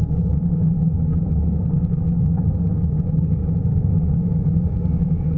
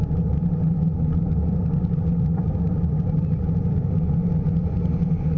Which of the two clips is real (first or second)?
second